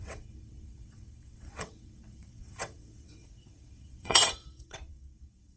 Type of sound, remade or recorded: remade